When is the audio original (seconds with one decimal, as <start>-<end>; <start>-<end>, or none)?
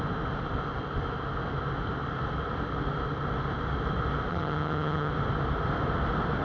0.0-4.3; 5.1-6.4